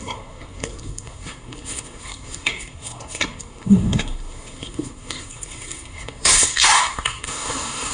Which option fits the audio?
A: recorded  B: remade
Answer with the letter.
B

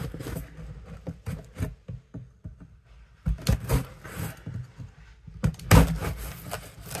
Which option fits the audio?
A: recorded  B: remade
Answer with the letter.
A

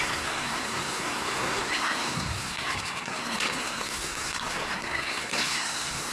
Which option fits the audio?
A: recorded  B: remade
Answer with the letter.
B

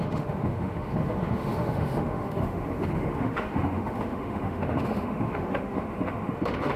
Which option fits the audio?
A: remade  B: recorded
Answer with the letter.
A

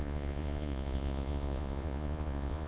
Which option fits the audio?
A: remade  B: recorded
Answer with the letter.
A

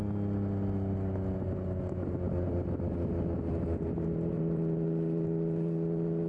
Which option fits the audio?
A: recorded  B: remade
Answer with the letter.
A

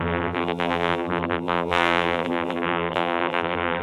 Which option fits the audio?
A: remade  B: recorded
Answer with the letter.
A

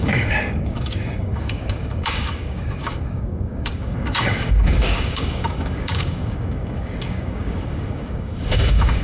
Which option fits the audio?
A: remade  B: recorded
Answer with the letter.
A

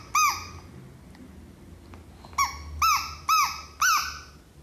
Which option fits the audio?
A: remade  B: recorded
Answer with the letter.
B